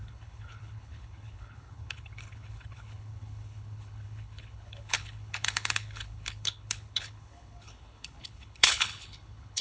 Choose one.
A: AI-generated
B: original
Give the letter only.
A